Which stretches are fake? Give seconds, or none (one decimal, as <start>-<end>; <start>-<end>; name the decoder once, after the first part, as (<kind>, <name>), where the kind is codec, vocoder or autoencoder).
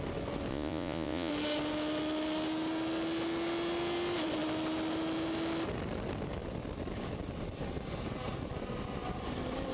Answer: 0.5-1.3 (vocoder, Vocos)